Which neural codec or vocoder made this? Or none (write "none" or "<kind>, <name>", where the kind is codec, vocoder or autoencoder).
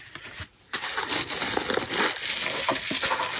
none